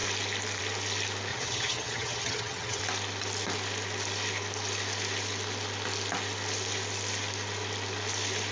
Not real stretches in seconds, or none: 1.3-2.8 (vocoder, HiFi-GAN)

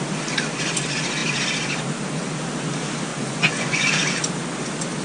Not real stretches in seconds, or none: 3.1-3.9 (vocoder, Vocos)

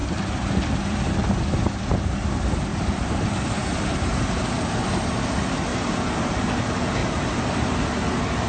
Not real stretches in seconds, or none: 0.0-1.6 (vocoder, BigVGAN v2); 2.7-4.4; 5.7-6.5; 7.0-7.5

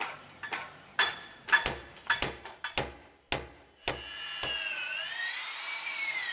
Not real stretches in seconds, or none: 0.0-1.4 (vocoder, BigVGAN v2); 5.2-6.3

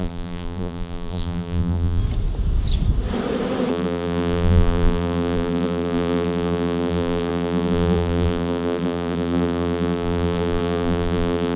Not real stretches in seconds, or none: 0.0-2.0 (vocoder, BigVGAN v2); 3.7-11.6

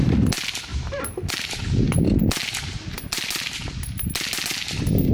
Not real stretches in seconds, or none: 0.7-1.3 (vocoder, BigVGAN v2)

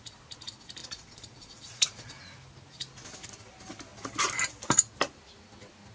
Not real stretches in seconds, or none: 0.8-2.1 (vocoder, Vocos)